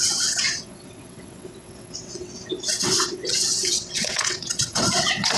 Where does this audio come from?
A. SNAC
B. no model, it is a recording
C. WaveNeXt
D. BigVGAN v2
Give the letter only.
C